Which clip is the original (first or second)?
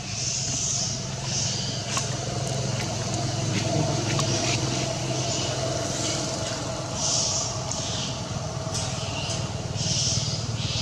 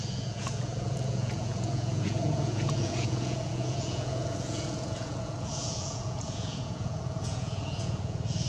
first